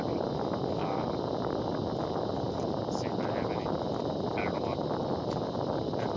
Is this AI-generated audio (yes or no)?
no